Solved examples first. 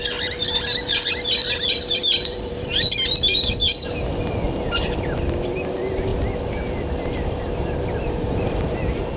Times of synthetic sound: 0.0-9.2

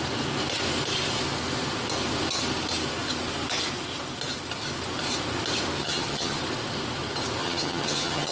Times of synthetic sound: 5.8-6.4; 7.4-8.3

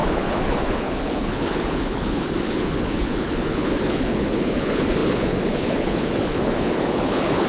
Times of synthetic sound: 0.0-7.5

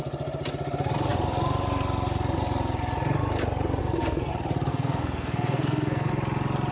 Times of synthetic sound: 3.8-4.3; 4.7-6.1

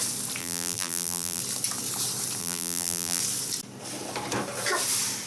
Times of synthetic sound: 0.4-1.4; 2.4-3.2